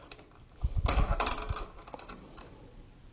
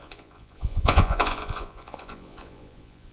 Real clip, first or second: first